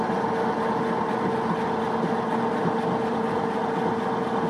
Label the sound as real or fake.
real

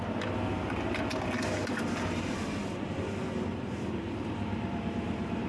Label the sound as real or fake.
fake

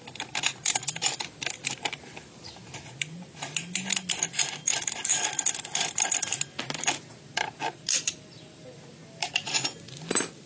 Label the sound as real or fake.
real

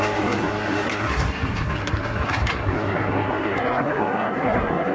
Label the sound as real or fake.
fake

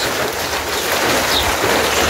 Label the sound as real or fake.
real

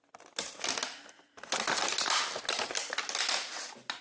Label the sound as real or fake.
real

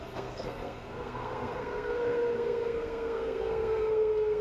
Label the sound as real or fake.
fake